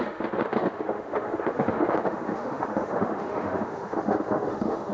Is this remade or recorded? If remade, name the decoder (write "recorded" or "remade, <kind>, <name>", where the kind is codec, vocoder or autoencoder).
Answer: remade, autoencoder, DAC-VAE